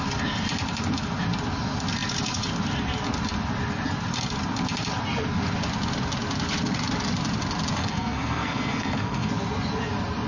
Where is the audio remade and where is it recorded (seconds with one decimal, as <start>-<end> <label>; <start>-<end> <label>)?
0.0-7.8 recorded; 7.8-9.3 remade; 9.3-10.3 recorded